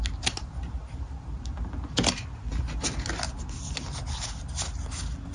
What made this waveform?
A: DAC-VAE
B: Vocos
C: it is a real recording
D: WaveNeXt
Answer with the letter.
C